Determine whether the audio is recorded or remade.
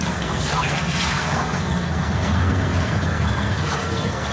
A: remade